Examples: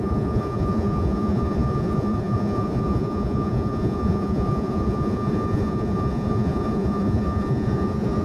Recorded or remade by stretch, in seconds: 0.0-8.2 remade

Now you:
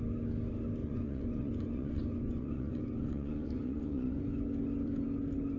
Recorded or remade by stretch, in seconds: 0.0-0.8 recorded; 0.8-4.2 remade; 4.2-5.6 recorded

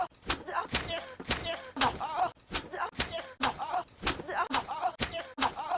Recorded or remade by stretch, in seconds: 0.0-5.8 recorded

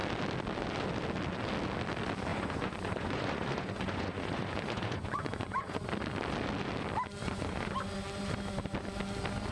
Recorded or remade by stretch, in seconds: 0.0-2.3 recorded; 2.3-5.9 remade; 5.9-7.2 recorded; 7.2-7.7 remade; 7.7-9.5 recorded

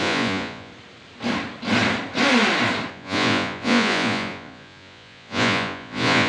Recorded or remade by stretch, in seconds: 0.0-0.7 remade; 0.7-2.9 recorded; 2.9-6.3 remade

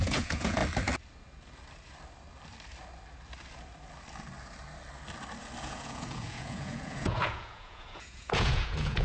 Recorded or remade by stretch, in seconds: 0.0-0.6 remade; 0.6-5.6 recorded; 5.6-9.0 remade